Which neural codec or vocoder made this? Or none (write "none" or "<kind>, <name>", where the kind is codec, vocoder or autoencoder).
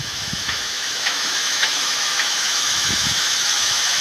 autoencoder, DAC-VAE